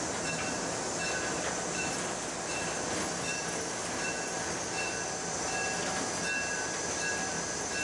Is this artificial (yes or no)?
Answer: no